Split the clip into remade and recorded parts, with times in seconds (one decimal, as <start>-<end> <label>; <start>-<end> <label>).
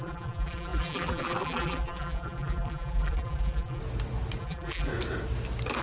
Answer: 0.0-3.8 remade; 3.8-4.4 recorded; 4.4-4.9 remade; 4.9-5.8 recorded